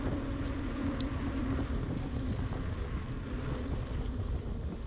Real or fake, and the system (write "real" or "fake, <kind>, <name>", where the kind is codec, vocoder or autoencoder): fake, vocoder, BigVGAN v2